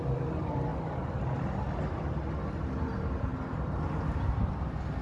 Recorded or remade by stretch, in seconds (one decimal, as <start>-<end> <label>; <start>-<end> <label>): 0.0-5.0 recorded